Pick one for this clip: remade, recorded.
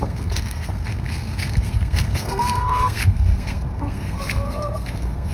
remade